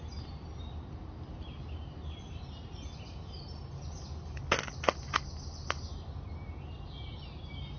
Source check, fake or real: real